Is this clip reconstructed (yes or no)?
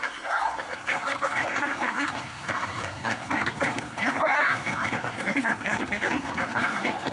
yes